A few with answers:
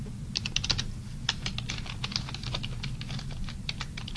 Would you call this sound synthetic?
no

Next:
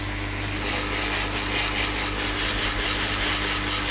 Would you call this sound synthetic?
no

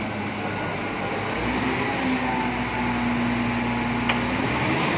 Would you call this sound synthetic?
no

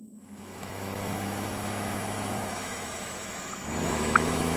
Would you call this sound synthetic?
yes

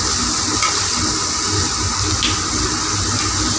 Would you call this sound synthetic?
no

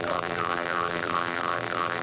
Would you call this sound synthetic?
yes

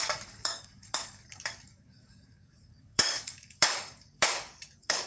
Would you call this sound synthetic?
yes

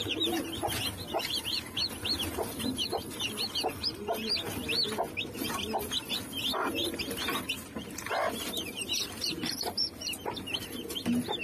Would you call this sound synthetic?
no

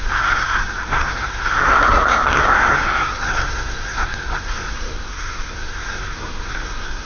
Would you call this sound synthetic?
yes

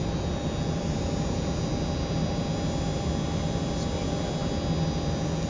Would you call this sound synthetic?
no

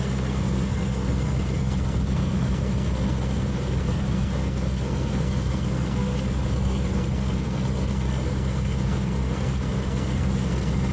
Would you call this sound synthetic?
yes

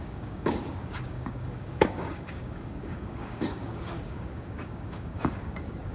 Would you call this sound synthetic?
yes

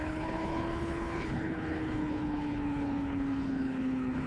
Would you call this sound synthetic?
yes